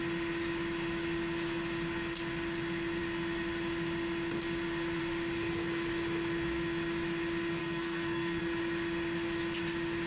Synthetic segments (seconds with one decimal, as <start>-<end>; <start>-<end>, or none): 7.6-8.4